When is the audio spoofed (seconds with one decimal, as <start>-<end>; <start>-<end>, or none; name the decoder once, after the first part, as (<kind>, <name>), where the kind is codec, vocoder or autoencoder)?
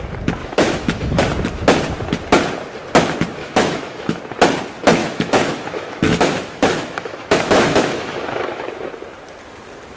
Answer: 0.4-1.2 (autoencoder, DAC-VAE); 3.4-4.2; 5.0-8.9